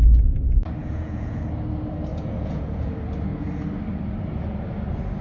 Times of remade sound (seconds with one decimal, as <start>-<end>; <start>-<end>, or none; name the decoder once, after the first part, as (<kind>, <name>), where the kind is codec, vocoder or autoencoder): 0.8-1.4 (vocoder, Vocos); 2.1-2.9